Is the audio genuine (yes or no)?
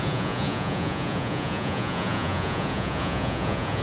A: no